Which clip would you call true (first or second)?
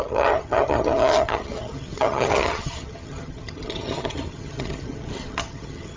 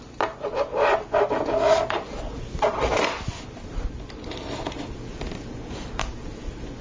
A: second